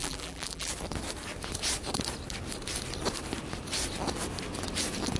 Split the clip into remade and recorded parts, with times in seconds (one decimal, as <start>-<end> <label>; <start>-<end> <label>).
0.0-0.7 remade; 0.7-5.2 recorded